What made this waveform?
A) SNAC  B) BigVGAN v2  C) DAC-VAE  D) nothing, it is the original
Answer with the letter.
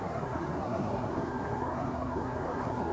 A